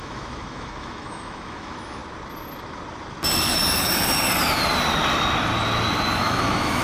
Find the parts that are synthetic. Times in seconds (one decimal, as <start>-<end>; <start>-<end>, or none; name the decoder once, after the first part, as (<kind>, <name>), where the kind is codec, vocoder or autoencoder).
0.0-2.0 (autoencoder, DAC-VAE); 6.1-6.8